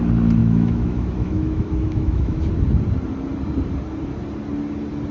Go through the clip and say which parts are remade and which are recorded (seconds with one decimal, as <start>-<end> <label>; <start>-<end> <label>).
0.0-0.4 recorded; 0.4-2.5 remade; 2.5-5.1 recorded